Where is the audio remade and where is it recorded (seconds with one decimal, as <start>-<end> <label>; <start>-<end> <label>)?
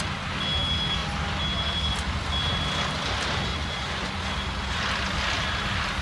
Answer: 0.0-3.5 recorded; 3.5-4.1 remade; 4.1-6.0 recorded